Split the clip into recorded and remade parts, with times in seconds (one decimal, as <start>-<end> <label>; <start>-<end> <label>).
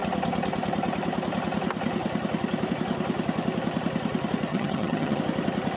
0.0-4.5 recorded; 4.5-5.2 remade; 5.2-5.8 recorded